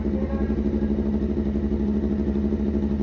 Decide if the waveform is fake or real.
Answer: real